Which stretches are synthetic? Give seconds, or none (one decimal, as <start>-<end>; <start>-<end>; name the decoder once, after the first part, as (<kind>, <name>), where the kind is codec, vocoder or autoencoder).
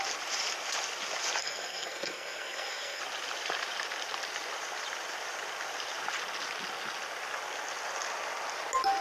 1.4-3.0 (codec, SNAC)